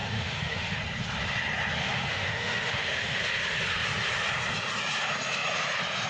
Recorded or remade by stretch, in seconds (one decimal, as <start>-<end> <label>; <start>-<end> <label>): 0.0-0.8 remade; 0.8-1.8 recorded; 1.8-3.2 remade; 3.2-6.1 recorded